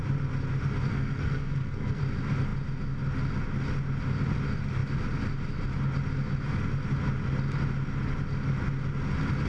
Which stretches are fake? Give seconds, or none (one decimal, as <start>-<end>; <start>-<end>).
0.9-2.0